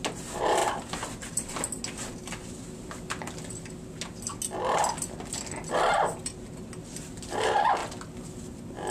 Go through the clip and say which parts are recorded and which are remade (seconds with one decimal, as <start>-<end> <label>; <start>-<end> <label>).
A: 0.0-0.6 recorded; 0.6-1.5 remade; 1.5-8.9 recorded